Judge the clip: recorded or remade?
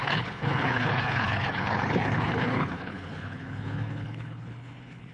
remade